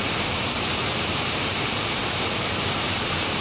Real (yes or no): no